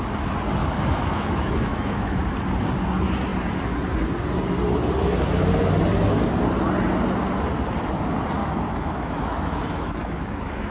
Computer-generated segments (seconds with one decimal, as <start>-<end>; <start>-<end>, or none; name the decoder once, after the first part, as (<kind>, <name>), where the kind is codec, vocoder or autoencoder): 0.6-2.2 (autoencoder, DAC-VAE); 8.4-10.7